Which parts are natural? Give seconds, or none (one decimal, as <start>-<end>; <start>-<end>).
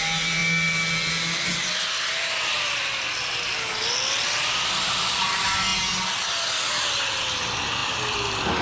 0.0-8.6